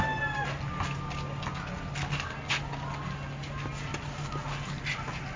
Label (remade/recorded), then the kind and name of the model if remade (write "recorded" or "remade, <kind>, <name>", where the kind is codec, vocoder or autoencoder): recorded